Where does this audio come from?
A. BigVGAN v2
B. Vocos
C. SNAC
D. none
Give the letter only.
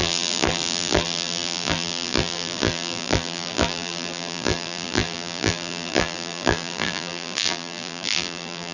A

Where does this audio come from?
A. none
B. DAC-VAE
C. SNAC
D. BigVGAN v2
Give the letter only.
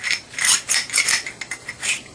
D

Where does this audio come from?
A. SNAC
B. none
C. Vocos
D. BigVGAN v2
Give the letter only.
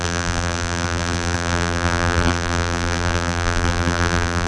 D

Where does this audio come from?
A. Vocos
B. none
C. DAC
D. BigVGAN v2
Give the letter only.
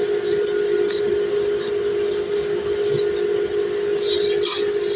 B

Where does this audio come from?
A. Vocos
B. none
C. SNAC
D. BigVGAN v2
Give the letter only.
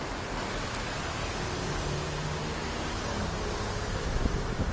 B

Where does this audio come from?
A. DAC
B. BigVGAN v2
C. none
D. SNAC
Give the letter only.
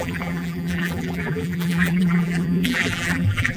B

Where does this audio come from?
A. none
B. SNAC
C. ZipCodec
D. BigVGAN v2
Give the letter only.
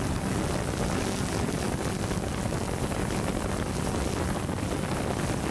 A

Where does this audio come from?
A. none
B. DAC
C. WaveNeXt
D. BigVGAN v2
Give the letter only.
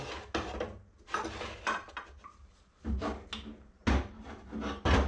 A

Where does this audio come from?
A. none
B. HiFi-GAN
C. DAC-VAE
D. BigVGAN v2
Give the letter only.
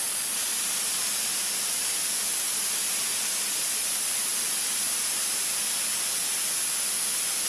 A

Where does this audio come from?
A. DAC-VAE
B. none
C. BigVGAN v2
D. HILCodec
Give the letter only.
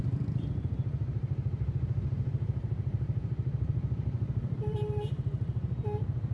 C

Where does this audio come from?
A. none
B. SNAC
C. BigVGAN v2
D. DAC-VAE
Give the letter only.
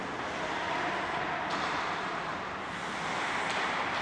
A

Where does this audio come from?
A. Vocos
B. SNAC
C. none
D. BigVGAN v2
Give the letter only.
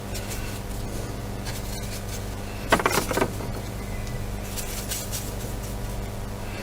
C